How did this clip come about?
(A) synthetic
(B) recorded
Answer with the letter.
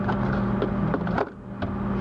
B